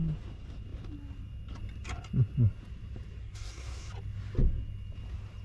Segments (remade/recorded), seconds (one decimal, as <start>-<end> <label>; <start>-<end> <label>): 0.0-3.2 recorded; 3.2-3.9 remade; 3.9-5.4 recorded